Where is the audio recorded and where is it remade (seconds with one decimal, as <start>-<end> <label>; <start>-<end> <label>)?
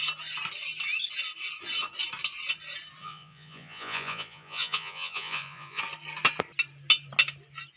0.0-3.0 recorded; 3.0-5.8 remade; 5.8-7.8 recorded